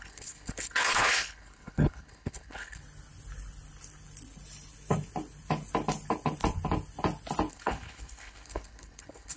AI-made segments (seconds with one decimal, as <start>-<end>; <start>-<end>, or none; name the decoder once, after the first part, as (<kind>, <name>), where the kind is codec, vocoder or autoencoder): 0.0-2.8 (codec, HILCodec); 7.5-9.4